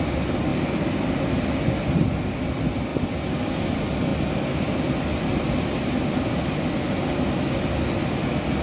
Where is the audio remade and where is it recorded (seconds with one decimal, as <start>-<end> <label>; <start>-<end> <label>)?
0.0-8.6 recorded